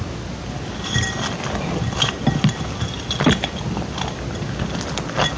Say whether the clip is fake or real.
real